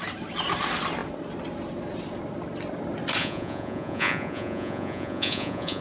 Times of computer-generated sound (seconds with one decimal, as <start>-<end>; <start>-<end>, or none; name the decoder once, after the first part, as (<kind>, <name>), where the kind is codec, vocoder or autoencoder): 3.2-5.8 (vocoder, Vocos)